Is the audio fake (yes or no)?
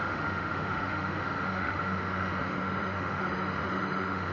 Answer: yes